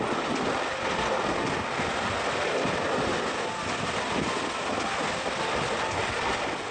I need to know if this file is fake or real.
real